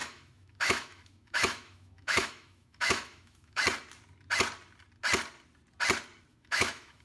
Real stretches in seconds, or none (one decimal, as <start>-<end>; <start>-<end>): 3.6-6.3